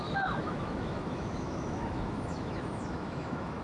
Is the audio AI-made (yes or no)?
yes